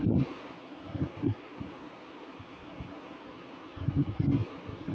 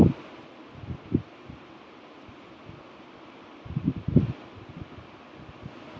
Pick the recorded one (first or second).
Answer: second